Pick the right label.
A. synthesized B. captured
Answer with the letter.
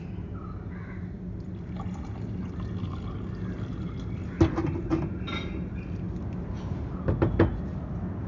B